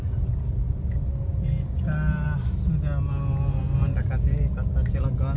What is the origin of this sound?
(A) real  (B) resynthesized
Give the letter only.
A